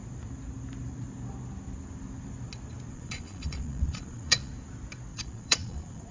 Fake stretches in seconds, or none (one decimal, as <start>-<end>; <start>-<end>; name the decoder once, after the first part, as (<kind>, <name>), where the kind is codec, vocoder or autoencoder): 2.9-4.5 (vocoder, Vocos); 5.1-6.1